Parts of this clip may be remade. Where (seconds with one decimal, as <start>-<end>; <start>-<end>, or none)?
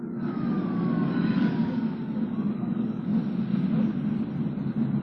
0.0-3.1